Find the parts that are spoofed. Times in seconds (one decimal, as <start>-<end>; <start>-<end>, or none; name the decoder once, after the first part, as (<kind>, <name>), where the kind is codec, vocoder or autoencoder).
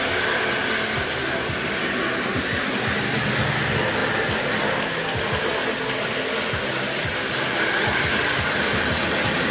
none